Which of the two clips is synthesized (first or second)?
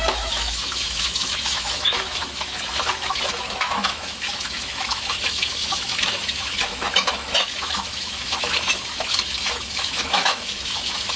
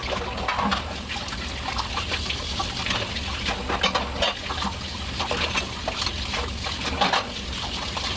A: first